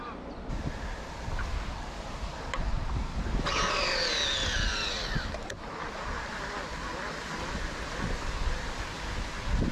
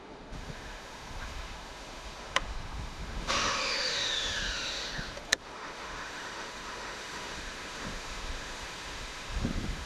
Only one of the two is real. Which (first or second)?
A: first